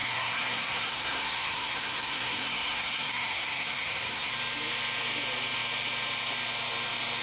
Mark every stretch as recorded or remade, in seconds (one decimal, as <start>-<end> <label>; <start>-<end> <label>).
0.0-4.3 remade; 4.3-7.2 recorded